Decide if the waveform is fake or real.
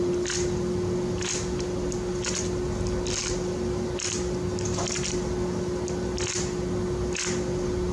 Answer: real